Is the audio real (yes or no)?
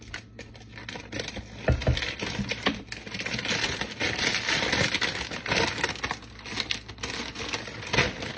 yes